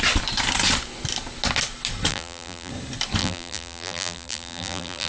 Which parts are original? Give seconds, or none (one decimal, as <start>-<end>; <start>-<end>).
0.0-2.1; 2.7-3.2